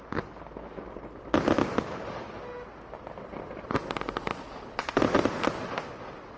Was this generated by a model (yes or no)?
no